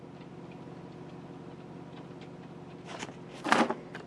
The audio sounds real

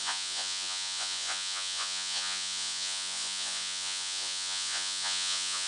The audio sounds fake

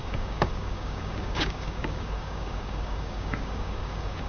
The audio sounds fake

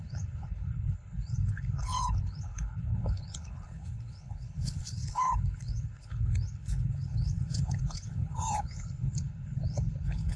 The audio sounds fake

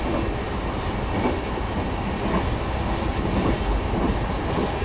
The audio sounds real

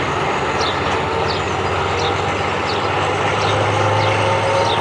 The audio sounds real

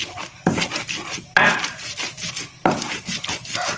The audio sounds real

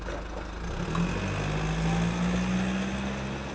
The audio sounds real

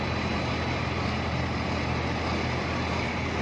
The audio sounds real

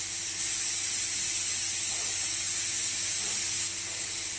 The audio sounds real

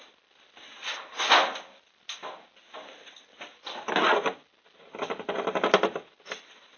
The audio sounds real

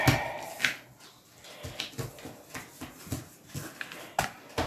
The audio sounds real